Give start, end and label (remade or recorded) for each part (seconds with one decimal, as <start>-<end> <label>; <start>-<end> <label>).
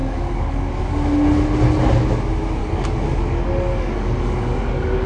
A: 0.0-0.8 remade; 0.8-2.6 recorded; 2.6-5.1 remade